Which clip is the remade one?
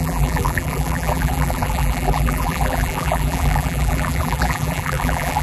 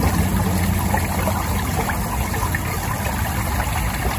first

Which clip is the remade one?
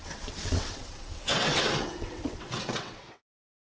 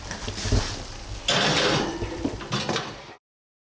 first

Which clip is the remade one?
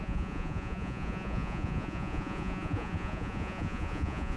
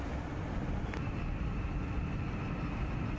first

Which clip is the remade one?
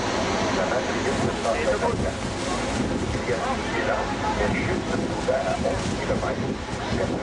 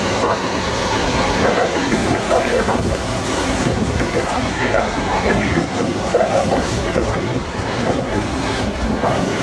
second